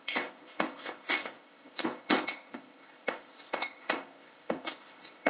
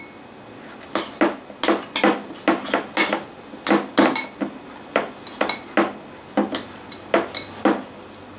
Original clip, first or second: second